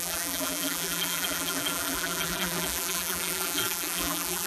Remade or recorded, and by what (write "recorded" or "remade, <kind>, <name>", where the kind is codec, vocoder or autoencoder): remade, vocoder, BigVGAN v2